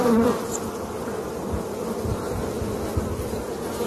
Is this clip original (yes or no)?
yes